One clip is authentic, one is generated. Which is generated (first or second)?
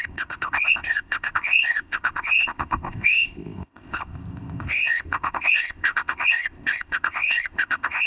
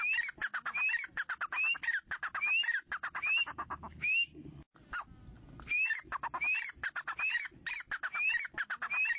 first